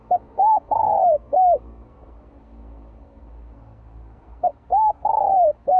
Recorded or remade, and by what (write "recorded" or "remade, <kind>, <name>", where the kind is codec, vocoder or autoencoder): remade, codec, SNAC